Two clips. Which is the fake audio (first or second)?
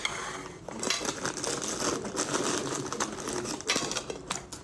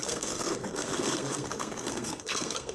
second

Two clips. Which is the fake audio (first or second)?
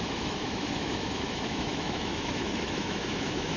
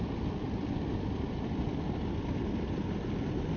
first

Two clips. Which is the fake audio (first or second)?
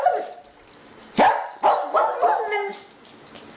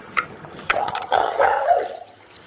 second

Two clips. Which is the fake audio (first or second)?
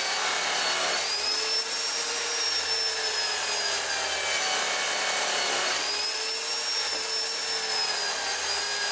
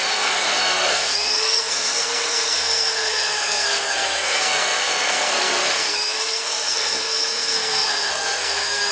second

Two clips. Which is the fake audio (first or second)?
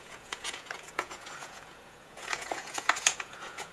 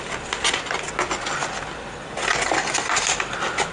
first